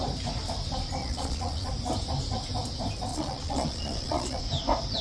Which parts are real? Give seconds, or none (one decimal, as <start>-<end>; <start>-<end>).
0.0-1.0; 1.7-3.1; 4.4-5.0